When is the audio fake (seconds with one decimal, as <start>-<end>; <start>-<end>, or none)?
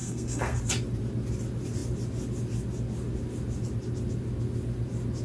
0.0-0.6